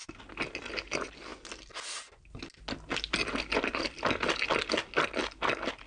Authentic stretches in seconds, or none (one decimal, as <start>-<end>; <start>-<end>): 0.0-5.9